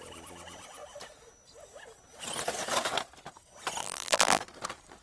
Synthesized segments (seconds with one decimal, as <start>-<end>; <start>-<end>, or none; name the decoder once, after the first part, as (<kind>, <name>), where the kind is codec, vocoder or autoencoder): 3.8-4.4 (vocoder, BigVGAN v2)